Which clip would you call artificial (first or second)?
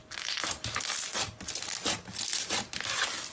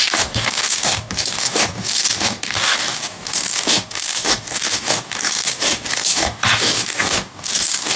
second